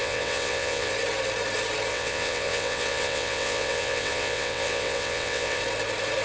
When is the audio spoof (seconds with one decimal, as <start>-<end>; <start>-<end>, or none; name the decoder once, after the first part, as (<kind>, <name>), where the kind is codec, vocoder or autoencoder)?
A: 0.0-0.9 (vocoder, WaveNeXt); 1.9-5.6

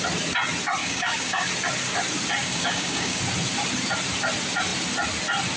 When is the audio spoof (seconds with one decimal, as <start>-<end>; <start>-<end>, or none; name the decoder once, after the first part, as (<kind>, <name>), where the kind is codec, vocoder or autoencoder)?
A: 0.8-1.5 (codec, DAC); 2.4-3.2

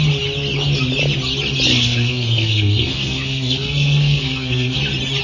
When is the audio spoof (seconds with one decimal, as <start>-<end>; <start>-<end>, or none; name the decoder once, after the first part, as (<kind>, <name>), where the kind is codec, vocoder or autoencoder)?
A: 1.7-4.8 (codec, SNAC)

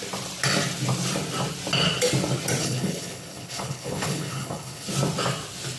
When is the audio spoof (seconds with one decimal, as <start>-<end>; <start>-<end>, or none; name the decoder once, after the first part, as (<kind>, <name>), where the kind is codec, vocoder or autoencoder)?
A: 2.6-4.9 (codec, HILCodec)